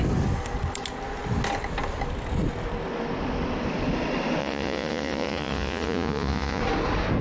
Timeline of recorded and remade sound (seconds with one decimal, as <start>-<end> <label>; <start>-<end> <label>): 0.0-4.4 recorded; 4.4-6.6 remade; 6.6-7.2 recorded